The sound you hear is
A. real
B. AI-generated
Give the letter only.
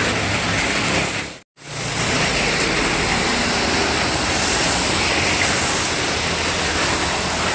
A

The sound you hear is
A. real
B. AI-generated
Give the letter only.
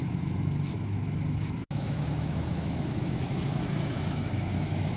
B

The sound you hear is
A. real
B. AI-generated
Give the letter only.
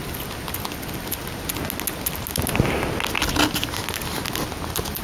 A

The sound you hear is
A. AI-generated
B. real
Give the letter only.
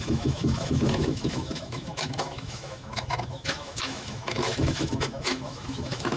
A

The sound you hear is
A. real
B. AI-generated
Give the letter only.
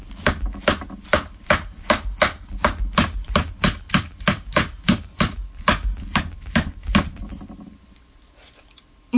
A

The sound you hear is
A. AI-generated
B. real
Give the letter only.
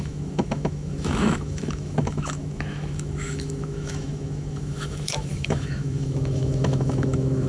A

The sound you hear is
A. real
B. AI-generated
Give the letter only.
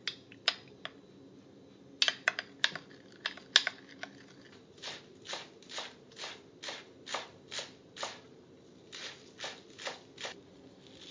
A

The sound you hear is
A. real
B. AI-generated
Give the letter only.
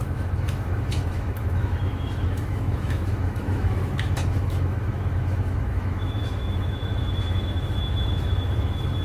B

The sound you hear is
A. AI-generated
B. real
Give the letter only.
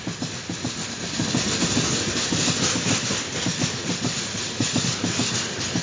B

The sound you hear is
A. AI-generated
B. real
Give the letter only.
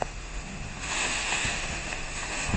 A